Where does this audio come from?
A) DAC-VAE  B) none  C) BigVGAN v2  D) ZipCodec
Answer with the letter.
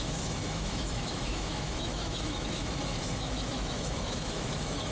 A